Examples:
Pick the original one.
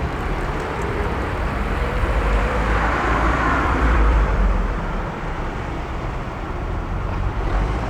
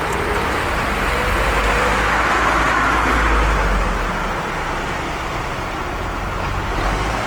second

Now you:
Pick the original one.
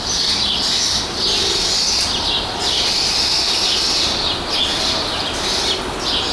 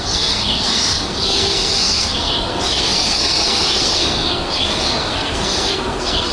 first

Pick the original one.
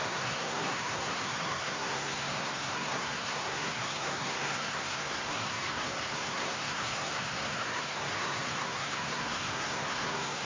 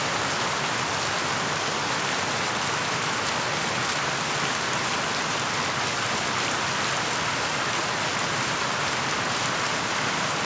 second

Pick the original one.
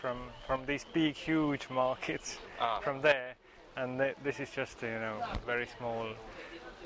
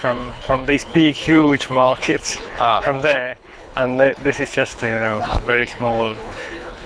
first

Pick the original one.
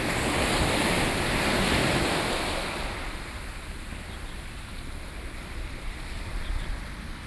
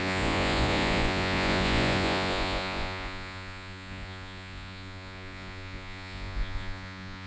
first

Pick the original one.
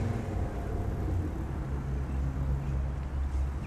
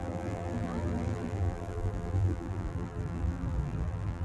first